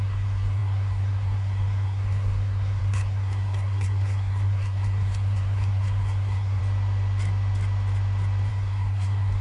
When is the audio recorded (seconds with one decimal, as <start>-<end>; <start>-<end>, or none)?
6.6-8.5